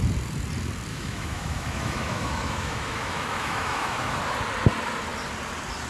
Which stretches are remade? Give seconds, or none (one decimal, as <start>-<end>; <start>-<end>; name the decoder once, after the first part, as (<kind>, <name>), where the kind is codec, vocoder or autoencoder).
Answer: 0.9-4.2 (autoencoder, DAC-VAE)